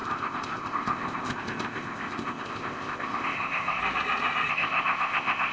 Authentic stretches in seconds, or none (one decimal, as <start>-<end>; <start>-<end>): 3.8-4.5